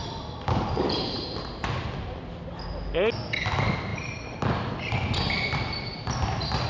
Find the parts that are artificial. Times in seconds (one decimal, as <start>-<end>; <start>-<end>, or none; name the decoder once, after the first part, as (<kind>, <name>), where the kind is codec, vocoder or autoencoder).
0.0-1.9 (vocoder, BigVGAN v2)